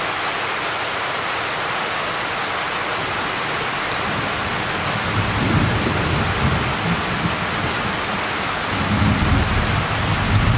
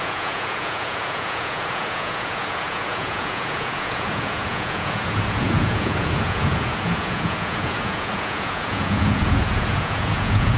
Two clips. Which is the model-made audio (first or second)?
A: second